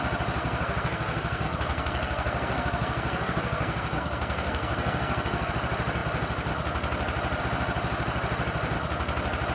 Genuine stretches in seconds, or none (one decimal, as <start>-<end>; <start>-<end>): 0.0-0.4; 5.5-9.5